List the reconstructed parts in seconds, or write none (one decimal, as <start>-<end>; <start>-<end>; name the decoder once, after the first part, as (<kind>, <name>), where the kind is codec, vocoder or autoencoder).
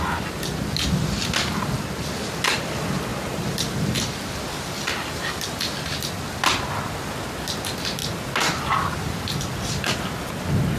3.1-4.9 (vocoder, BigVGAN v2); 8.0-10.3